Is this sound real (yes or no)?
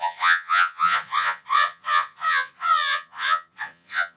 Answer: no